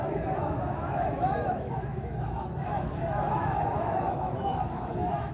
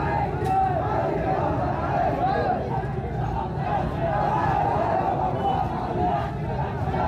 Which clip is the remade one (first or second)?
first